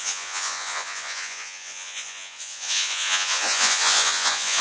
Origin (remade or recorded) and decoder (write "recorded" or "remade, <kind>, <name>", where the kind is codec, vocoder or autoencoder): remade, vocoder, Vocos